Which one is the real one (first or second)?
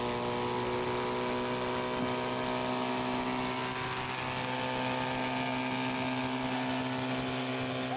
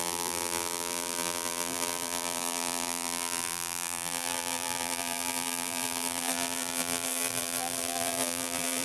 first